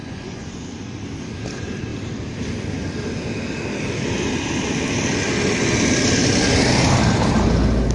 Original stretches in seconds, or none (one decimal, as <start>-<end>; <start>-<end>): 0.6-7.9